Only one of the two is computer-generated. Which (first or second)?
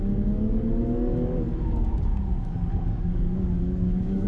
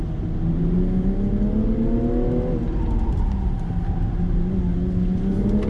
first